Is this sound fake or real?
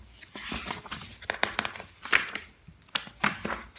real